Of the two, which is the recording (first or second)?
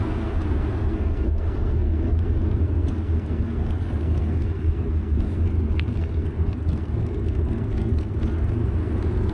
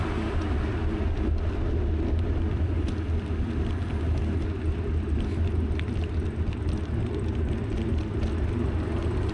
second